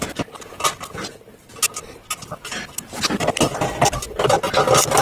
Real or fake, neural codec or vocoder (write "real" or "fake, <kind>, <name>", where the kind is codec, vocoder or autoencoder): real